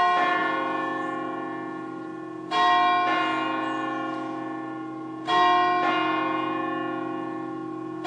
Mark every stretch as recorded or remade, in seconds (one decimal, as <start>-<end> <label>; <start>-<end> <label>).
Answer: 0.0-8.1 recorded